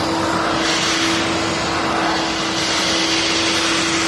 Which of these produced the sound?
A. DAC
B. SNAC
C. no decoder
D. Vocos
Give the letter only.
C